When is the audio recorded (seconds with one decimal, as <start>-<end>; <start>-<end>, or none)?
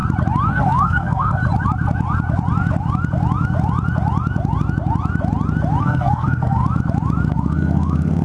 0.0-0.5; 1.4-5.8; 6.6-7.3